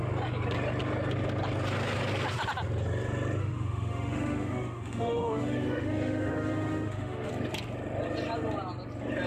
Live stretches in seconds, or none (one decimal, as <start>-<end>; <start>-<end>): 0.0-3.4; 7.3-9.3